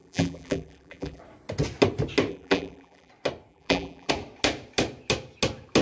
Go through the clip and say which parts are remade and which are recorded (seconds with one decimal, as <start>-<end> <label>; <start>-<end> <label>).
0.0-1.2 remade; 1.2-2.3 recorded; 2.3-3.1 remade; 3.1-3.5 recorded; 3.5-4.1 remade; 4.1-5.8 recorded